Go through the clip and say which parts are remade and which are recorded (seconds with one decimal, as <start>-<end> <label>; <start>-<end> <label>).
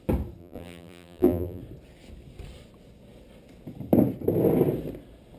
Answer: 0.0-0.4 recorded; 0.4-1.6 remade; 1.6-5.4 recorded